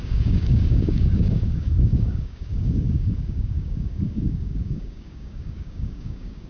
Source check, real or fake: fake